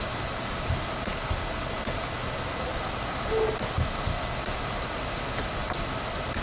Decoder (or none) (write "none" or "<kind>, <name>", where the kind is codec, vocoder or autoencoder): none